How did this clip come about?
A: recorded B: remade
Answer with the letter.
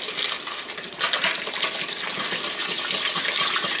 A